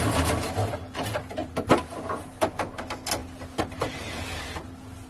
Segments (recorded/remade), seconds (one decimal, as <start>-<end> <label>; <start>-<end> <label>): 0.0-5.1 recorded